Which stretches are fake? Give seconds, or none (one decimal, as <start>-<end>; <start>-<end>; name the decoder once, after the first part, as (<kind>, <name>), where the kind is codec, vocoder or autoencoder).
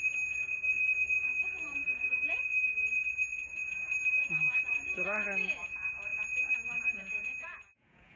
0.0-8.2 (vocoder, Vocos)